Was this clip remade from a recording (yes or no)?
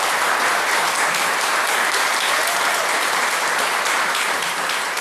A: yes